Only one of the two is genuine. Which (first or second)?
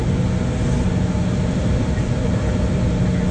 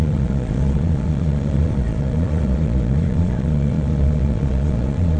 first